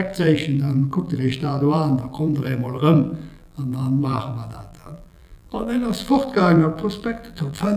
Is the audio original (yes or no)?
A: no